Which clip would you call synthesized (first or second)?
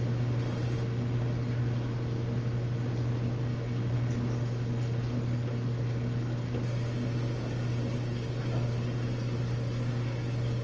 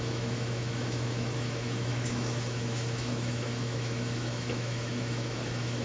second